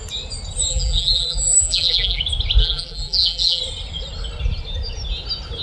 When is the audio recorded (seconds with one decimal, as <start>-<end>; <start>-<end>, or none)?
0.0-0.7; 2.2-2.6; 3.6-5.6

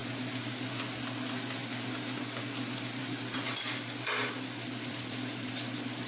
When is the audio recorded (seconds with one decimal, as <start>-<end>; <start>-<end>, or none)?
0.0-3.0; 5.5-6.1